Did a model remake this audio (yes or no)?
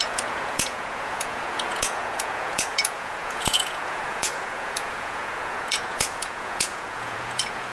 yes